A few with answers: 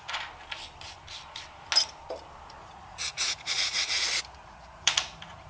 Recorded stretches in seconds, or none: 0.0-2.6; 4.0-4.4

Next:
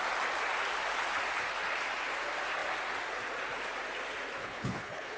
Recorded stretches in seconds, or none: 0.0-4.4